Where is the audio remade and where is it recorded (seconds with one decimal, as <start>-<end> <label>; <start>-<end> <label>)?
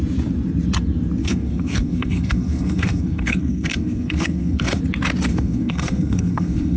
0.0-1.2 recorded; 1.2-4.8 remade; 4.8-5.3 recorded; 5.3-6.8 remade